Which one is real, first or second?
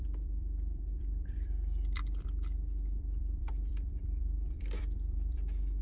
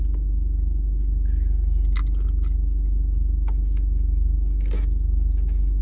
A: second